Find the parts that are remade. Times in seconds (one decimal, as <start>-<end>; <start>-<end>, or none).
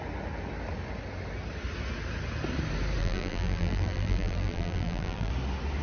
3.0-5.3